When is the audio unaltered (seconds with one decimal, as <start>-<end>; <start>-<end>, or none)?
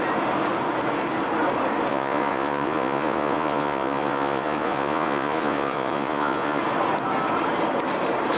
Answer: 0.0-1.9; 6.6-8.4